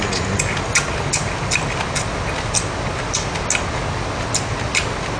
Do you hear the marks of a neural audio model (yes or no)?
no